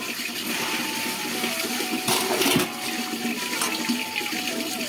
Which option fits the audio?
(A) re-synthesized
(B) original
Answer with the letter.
B